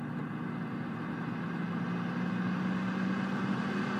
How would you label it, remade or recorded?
recorded